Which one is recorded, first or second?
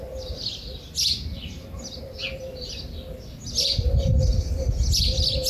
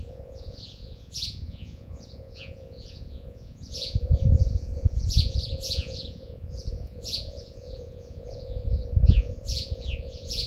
first